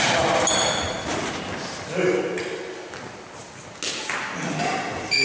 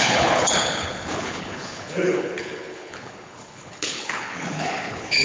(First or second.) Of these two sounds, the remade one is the second